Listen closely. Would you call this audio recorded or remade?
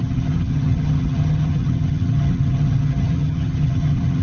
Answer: remade